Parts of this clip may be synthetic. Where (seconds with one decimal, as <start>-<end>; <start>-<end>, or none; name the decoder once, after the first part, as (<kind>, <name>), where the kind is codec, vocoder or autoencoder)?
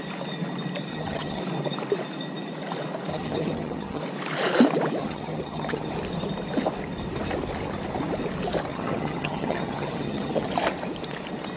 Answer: 0.9-1.4 (vocoder, HiFi-GAN); 3.1-4.0; 5.0-5.9; 8.7-10.5